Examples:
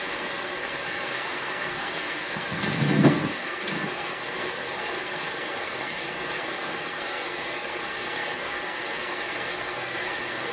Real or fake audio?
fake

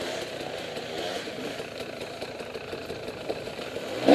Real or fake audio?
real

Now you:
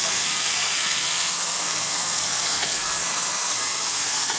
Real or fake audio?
fake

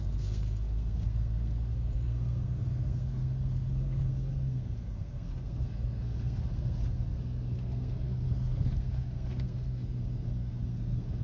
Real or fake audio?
fake